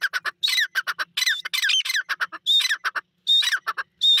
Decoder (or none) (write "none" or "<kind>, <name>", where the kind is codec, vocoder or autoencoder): none